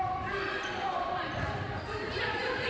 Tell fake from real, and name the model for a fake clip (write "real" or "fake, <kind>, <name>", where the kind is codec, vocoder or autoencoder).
fake, vocoder, BigVGAN v2